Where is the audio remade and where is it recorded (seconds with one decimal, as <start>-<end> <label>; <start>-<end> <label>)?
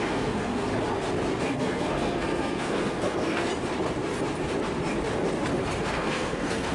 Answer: 0.0-0.7 remade; 0.7-1.4 recorded; 1.4-3.5 remade; 3.5-5.8 recorded; 5.8-6.7 remade